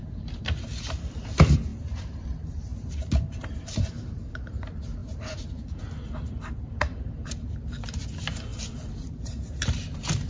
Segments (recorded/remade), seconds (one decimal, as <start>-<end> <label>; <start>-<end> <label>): 0.0-8.5 remade; 8.5-9.1 recorded; 9.1-10.3 remade